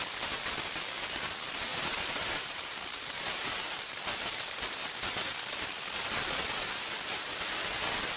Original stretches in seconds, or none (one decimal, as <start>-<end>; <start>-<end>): 0.0-1.7; 5.4-8.2